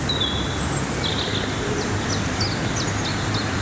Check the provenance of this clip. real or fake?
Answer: real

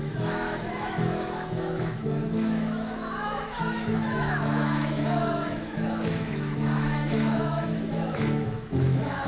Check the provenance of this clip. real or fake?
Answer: fake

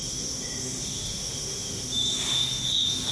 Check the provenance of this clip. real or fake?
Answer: fake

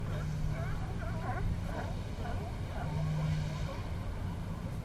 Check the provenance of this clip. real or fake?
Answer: real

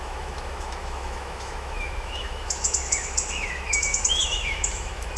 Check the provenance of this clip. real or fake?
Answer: fake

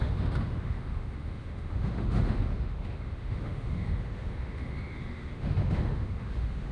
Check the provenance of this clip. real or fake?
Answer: fake